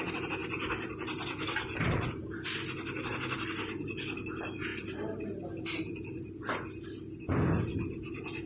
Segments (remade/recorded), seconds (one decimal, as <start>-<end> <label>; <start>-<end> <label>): 0.0-8.5 recorded